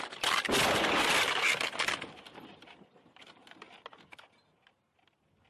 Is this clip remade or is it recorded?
recorded